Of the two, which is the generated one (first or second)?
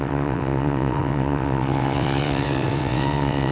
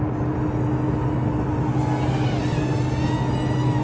first